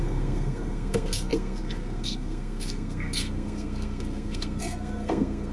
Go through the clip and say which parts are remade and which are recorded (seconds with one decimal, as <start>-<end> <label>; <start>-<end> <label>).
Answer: 0.0-5.5 remade